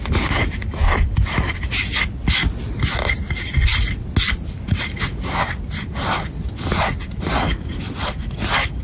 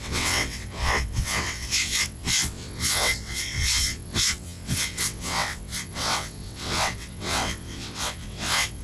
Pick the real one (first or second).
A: first